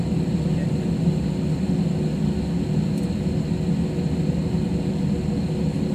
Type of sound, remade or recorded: recorded